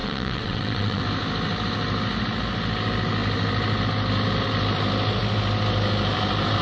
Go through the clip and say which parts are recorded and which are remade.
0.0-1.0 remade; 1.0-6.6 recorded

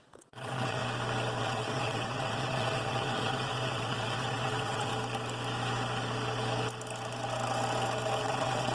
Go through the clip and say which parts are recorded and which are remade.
0.0-0.8 remade; 0.8-1.4 recorded; 1.4-4.9 remade; 4.9-8.2 recorded; 8.2-8.7 remade

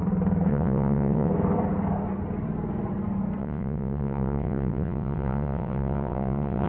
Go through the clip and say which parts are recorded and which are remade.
0.0-0.5 recorded; 0.5-1.3 remade; 1.3-3.4 recorded; 3.4-6.7 remade

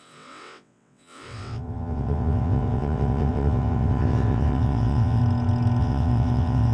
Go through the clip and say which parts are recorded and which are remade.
0.0-5.2 remade; 5.2-5.8 recorded; 5.8-6.7 remade

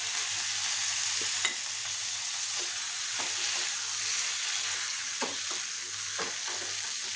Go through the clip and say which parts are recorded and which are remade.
0.0-1.8 recorded; 1.8-3.2 remade; 3.2-4.9 recorded; 4.9-5.4 remade; 5.4-7.2 recorded